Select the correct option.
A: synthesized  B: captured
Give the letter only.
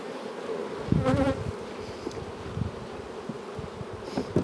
B